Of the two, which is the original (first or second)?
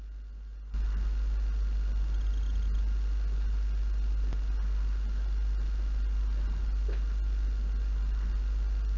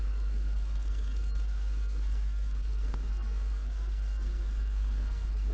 first